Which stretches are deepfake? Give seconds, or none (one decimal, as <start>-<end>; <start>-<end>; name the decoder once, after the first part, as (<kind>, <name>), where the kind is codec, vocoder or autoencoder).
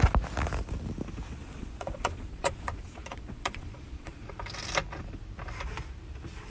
1.4-4.3 (vocoder, Vocos)